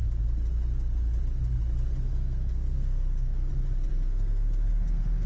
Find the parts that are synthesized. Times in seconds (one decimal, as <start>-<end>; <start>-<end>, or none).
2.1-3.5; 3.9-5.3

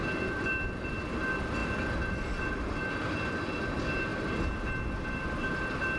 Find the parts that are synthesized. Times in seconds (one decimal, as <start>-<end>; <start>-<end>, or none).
none

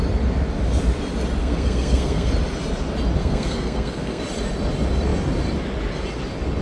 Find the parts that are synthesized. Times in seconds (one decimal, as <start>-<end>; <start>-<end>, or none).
1.4-2.3; 3.2-4.2

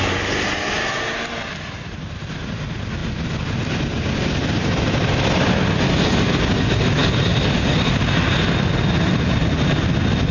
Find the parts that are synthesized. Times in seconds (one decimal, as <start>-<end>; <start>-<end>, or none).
none

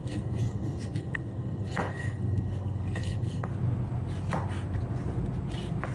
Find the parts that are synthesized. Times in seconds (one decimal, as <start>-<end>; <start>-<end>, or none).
0.0-3.5

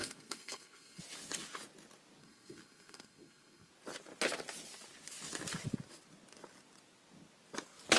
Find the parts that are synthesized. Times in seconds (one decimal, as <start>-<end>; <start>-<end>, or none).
0.0-1.0; 2.2-3.7

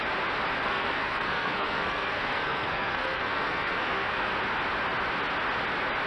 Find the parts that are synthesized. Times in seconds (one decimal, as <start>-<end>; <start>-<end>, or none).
0.6-4.3